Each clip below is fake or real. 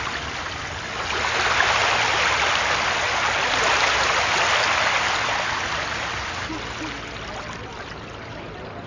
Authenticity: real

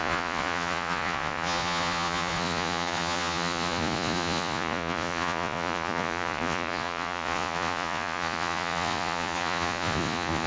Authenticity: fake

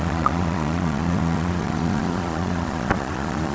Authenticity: fake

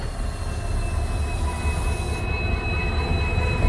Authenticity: real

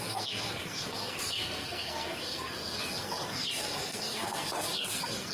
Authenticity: fake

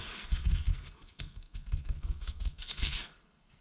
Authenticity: fake